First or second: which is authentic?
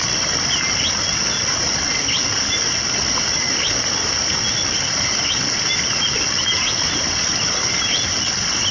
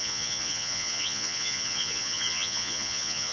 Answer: first